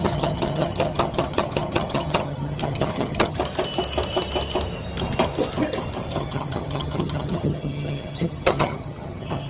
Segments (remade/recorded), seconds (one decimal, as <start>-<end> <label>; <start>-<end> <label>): 0.0-3.4 remade; 3.4-6.1 recorded; 6.1-9.5 remade